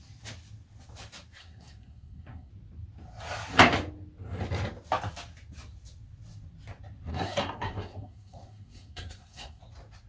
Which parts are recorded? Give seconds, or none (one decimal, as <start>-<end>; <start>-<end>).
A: 0.0-1.4; 2.5-7.1; 9.6-10.1